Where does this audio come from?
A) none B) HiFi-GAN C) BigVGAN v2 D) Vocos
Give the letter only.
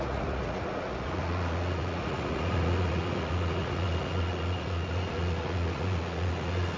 D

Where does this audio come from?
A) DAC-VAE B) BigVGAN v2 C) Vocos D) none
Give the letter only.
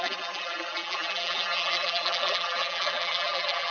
B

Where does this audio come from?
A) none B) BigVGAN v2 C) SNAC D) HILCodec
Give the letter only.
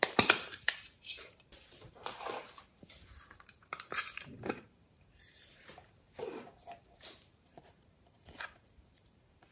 B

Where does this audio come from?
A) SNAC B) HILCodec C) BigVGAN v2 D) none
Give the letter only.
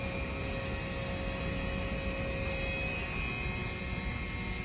D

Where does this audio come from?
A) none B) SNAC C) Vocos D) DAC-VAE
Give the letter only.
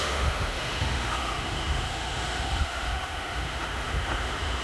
D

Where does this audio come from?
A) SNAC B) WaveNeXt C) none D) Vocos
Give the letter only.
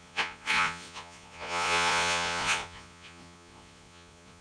D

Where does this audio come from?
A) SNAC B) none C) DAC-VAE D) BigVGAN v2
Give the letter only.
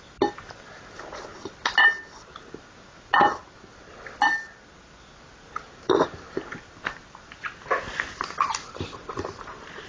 B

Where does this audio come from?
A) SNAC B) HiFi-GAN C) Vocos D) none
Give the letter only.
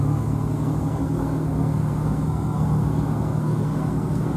A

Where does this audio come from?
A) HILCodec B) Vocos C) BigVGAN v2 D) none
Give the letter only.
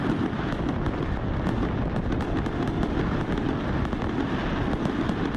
D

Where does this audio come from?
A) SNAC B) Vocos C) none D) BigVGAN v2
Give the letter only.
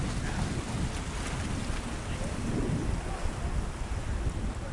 C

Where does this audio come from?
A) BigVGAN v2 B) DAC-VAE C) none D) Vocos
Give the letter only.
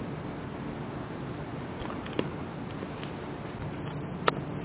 C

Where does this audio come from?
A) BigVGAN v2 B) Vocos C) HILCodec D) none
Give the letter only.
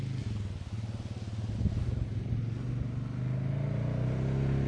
D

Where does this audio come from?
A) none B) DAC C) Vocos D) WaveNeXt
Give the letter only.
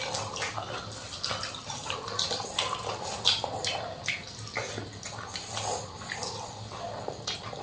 A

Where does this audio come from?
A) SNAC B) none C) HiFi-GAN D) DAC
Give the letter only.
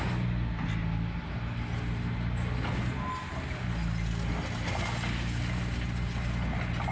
B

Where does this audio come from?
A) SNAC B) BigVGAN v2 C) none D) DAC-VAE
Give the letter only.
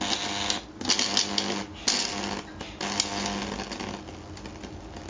C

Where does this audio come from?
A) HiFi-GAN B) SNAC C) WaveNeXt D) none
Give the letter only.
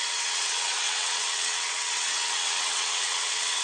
C